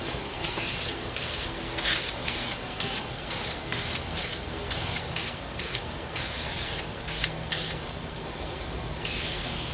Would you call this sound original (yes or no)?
no